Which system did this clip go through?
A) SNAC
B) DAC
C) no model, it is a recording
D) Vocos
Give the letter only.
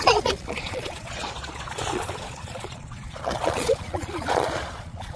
D